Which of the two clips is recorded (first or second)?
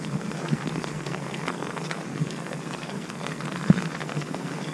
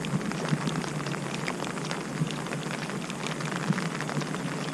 second